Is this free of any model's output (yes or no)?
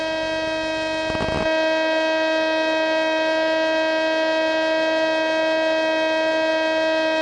yes